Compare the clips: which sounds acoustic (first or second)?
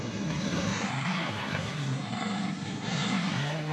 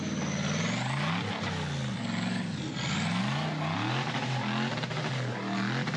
second